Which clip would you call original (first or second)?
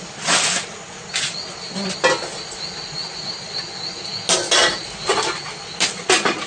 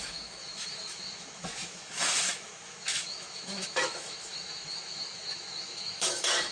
first